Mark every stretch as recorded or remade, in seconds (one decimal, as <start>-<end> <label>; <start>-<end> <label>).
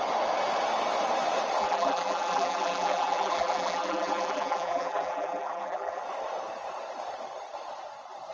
0.0-1.6 recorded; 1.6-6.0 remade; 6.0-8.3 recorded